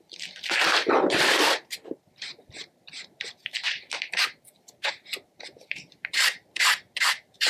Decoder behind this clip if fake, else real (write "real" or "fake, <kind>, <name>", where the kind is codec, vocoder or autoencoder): fake, vocoder, BigVGAN v2